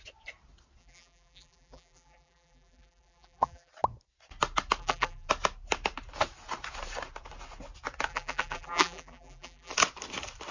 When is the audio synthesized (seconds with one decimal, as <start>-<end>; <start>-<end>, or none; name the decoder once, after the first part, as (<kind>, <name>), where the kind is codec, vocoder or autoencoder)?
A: 0.8-3.7 (vocoder, BigVGAN v2); 4.8-5.3; 8.1-9.7